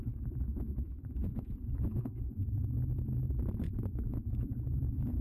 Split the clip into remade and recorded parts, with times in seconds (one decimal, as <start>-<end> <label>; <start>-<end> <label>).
0.0-2.4 remade; 2.4-3.9 recorded; 3.9-5.2 remade

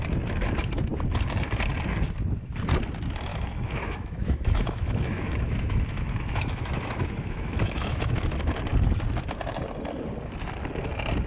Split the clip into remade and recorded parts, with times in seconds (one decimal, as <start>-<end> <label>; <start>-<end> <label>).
0.0-3.3 recorded; 3.3-8.1 remade; 8.1-11.3 recorded